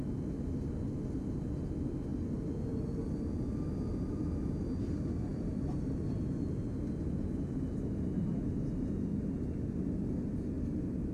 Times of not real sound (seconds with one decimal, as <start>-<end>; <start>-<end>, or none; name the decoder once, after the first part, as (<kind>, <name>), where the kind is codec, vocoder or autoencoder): none